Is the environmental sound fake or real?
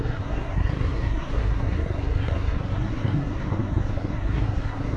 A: fake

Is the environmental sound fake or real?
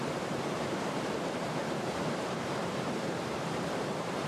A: fake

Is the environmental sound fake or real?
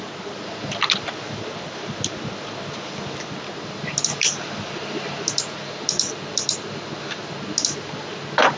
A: real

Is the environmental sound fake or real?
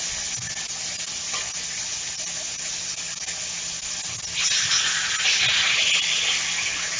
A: real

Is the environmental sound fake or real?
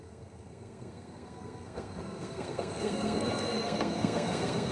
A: fake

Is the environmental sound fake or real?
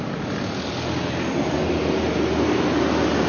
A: real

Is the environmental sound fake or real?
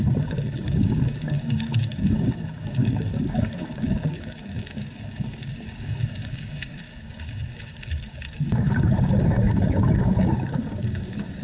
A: fake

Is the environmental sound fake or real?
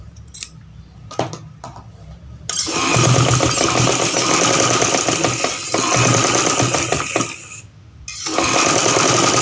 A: real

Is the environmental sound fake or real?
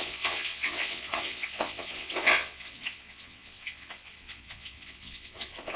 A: fake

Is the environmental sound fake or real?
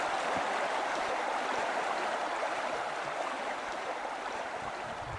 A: real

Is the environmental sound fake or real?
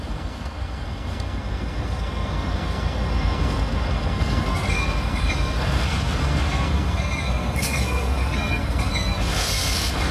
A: fake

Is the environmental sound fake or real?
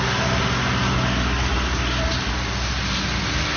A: real